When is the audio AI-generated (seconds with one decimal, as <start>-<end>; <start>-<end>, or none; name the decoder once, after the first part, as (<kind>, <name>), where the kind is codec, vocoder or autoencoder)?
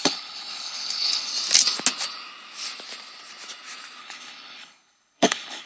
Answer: 0.0-1.3 (codec, HILCodec); 4.0-5.7